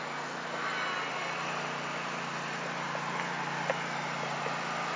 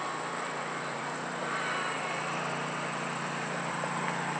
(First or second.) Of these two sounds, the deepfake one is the second